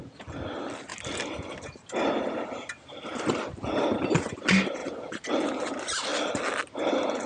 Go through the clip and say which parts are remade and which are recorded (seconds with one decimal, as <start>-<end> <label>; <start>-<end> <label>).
0.0-7.3 recorded